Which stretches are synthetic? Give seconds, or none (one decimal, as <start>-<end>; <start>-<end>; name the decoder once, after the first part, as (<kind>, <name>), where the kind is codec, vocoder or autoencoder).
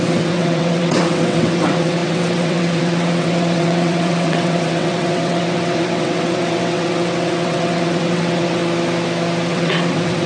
0.0-8.6 (vocoder, WaveNeXt); 9.5-10.3